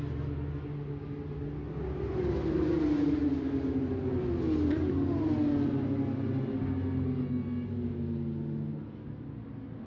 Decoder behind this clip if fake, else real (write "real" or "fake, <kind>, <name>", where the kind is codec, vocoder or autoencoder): real